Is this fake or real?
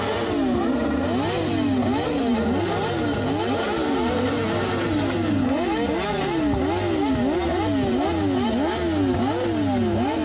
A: real